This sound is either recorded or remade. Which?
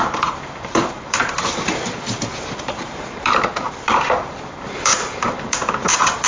remade